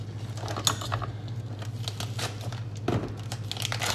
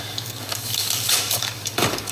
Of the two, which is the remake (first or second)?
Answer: second